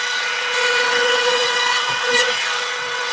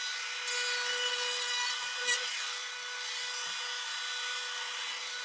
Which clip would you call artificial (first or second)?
first